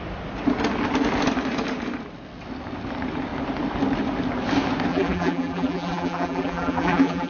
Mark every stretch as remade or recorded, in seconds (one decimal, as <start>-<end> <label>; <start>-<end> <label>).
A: 0.0-4.9 recorded; 4.9-7.3 remade